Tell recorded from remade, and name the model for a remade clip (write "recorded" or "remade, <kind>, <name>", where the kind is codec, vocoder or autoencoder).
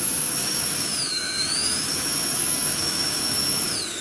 remade, autoencoder, DAC-VAE